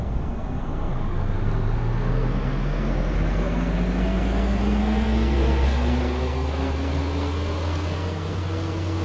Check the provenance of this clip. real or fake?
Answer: fake